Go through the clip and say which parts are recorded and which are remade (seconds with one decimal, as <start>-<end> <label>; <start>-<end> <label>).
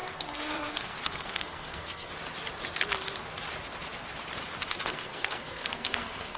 0.0-2.1 remade; 2.1-4.7 recorded; 4.7-6.4 remade